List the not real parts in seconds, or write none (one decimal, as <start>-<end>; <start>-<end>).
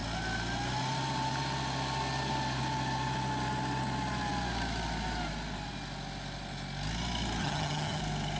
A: 7.4-8.0